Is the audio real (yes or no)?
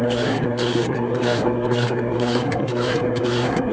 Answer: no